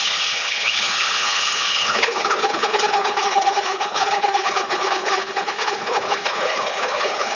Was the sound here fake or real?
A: fake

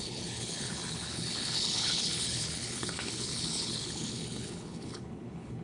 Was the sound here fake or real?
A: fake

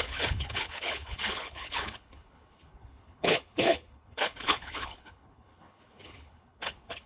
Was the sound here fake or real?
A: fake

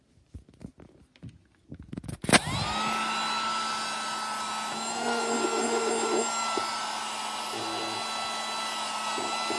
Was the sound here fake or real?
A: real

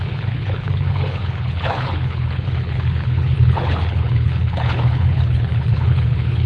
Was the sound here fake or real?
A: fake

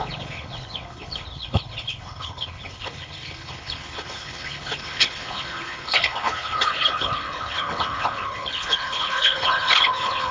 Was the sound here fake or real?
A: fake